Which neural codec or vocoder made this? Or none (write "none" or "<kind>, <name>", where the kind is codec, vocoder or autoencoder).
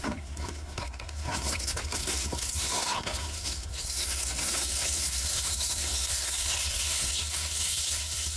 codec, SNAC